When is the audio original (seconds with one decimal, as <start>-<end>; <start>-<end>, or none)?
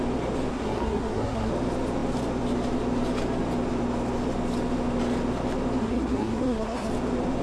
0.0-0.5; 1.5-5.8; 6.9-7.4